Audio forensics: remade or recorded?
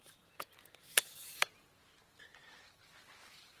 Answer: recorded